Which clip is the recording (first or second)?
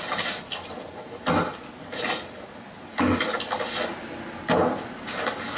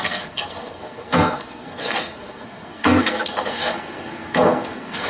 first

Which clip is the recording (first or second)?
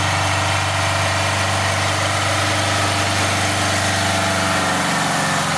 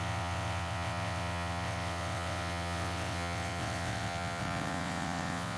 first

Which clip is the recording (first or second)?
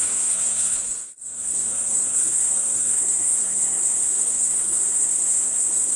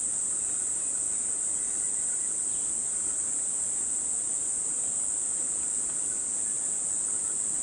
second